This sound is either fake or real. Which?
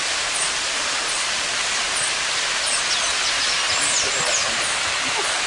real